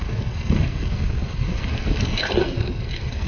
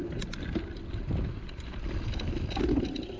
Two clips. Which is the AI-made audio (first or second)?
first